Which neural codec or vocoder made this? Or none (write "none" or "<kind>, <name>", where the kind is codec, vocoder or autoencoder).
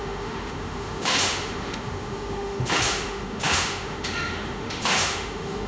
autoencoder, DAC-VAE